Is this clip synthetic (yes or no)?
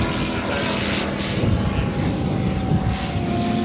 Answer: no